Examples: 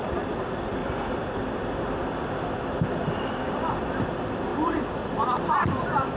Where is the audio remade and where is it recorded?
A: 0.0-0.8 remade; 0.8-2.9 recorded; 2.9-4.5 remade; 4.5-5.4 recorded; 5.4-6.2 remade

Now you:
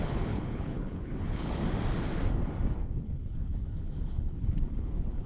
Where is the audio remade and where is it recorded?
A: 0.0-1.6 remade; 1.6-2.8 recorded; 2.8-5.3 remade

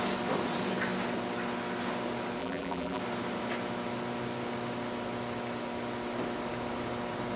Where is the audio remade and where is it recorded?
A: 0.0-2.4 recorded; 2.4-3.0 remade; 3.0-7.4 recorded

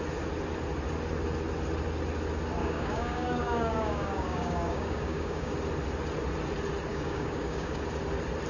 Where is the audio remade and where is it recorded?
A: 0.0-2.6 recorded; 2.6-5.5 remade; 5.5-6.9 recorded; 6.9-7.8 remade; 7.8-8.5 recorded

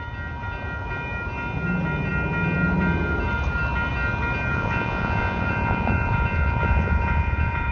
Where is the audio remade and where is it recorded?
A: 0.0-4.5 recorded; 4.5-7.7 remade

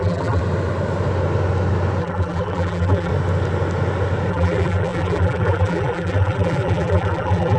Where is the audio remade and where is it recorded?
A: 0.0-0.4 remade; 0.4-2.0 recorded; 2.0-3.1 remade; 3.1-4.3 recorded; 4.3-7.6 remade